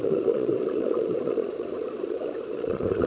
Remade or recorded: remade